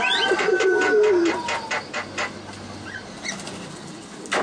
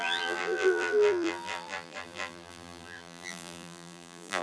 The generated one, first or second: second